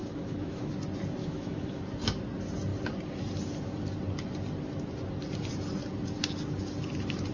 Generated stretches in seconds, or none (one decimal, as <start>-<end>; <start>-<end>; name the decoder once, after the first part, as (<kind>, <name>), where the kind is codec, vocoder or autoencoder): 0.0-0.7 (autoencoder, DAC-VAE); 1.2-1.8